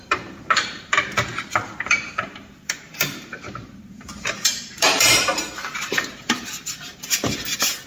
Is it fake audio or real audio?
fake